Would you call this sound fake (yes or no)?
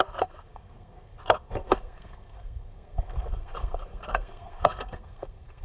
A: yes